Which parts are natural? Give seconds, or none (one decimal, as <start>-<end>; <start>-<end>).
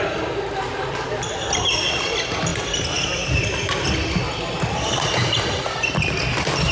0.0-6.7